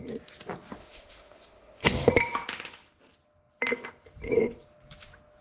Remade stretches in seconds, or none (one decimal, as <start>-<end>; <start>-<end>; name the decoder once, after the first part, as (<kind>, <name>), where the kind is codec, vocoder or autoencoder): 0.8-2.1 (autoencoder, DAC-VAE)